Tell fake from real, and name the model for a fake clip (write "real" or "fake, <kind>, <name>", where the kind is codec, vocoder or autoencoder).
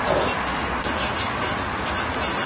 real